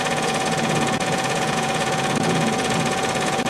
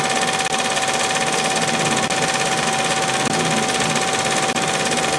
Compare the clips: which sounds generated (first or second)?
first